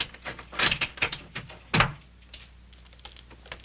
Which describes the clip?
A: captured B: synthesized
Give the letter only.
A